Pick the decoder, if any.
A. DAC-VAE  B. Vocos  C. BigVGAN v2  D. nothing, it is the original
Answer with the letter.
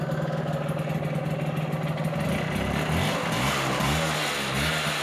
D